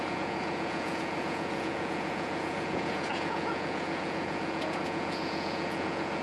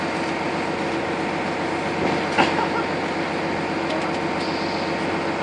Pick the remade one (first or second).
first